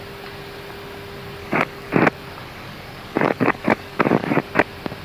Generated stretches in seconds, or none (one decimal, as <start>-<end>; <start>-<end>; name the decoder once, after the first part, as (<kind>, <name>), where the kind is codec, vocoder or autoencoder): 1.4-1.9 (codec, DAC); 2.4-4.4